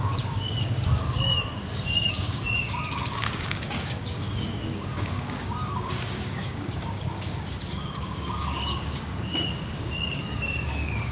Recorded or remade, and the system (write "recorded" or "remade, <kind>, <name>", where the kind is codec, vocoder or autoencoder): remade, codec, DAC